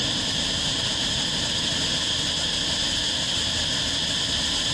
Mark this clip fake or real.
real